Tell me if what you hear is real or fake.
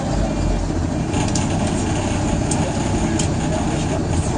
real